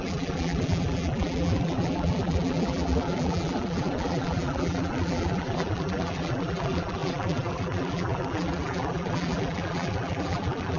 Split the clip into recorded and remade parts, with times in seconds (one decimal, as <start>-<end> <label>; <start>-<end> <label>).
0.0-10.8 remade